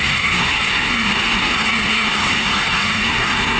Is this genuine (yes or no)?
no